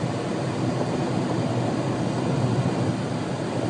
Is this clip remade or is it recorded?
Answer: recorded